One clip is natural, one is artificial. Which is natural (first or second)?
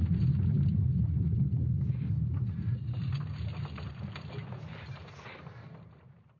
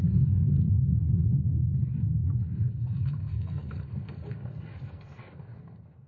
first